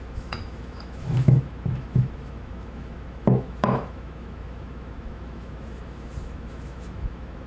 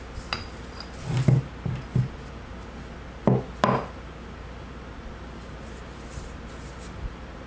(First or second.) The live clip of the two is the second